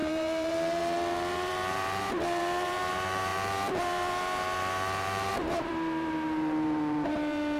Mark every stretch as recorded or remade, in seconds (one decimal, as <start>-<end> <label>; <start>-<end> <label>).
0.0-7.6 remade

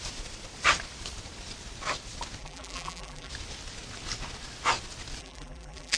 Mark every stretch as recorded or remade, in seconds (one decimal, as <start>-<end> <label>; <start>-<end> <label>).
0.0-2.4 recorded; 2.4-3.3 remade; 3.3-5.2 recorded; 5.2-6.0 remade

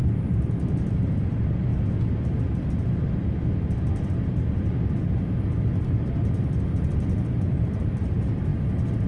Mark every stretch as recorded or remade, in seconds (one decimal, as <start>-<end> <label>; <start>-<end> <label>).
0.0-1.7 remade; 1.7-6.9 recorded; 6.9-9.1 remade

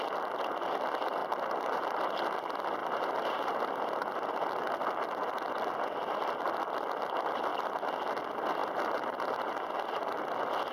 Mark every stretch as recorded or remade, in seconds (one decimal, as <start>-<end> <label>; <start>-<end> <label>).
0.0-1.2 recorded; 1.2-2.0 remade; 2.0-2.8 recorded; 2.8-3.7 remade; 3.7-8.6 recorded; 8.6-10.0 remade; 10.0-10.7 recorded